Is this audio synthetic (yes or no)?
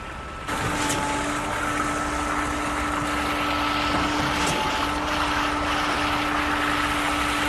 no